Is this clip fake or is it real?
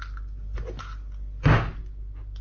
real